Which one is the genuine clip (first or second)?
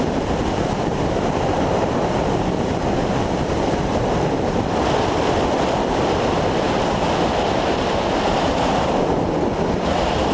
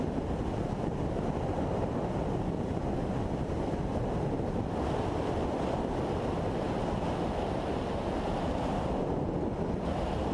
second